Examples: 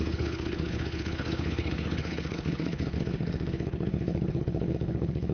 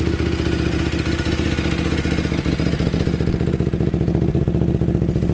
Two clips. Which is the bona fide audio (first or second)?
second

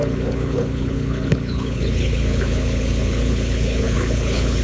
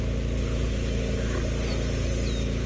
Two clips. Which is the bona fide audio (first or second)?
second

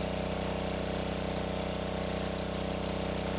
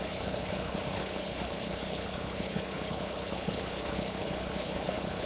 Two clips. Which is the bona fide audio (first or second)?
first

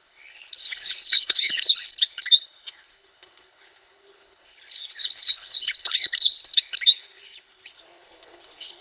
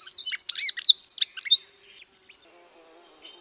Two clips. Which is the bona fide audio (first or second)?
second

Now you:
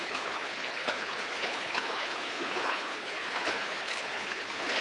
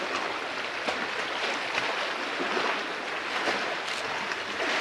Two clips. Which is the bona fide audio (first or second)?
second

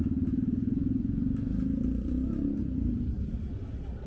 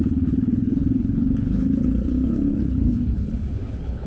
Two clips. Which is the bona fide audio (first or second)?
first